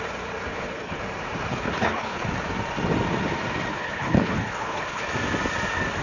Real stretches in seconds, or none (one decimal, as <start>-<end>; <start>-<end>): 0.0-0.5; 1.0-1.5; 2.3-3.7; 5.1-6.0